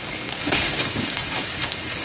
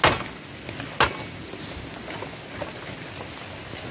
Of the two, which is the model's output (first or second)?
first